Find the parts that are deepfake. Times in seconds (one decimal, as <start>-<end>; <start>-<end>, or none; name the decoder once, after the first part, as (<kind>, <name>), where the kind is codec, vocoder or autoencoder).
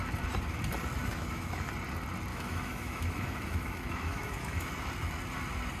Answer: 1.0-1.7 (autoencoder, DAC-VAE); 2.3-4.7